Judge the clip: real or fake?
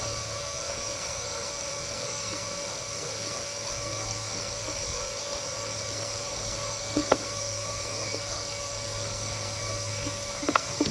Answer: fake